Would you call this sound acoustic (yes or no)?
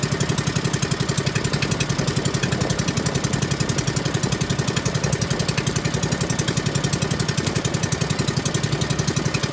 yes